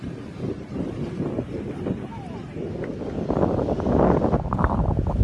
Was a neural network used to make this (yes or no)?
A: no